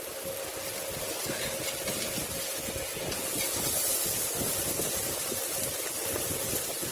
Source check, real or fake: real